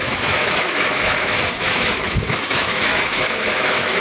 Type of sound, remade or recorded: remade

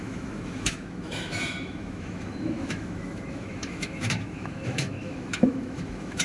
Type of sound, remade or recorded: remade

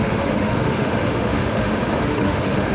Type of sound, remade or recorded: remade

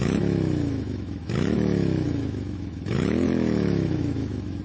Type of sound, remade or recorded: remade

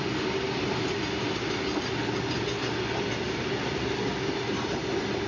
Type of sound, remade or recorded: recorded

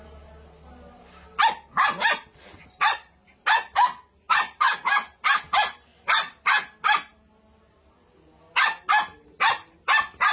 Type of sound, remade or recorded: recorded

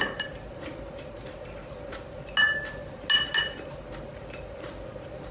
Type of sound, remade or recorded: recorded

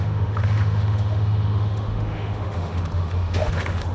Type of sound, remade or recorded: remade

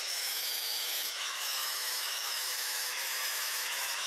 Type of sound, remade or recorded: remade